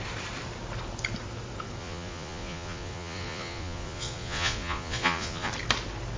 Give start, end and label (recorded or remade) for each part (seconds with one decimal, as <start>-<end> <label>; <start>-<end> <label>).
0.0-1.8 recorded; 1.8-5.5 remade; 5.5-6.2 recorded